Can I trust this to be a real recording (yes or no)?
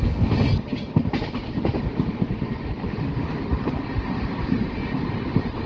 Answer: yes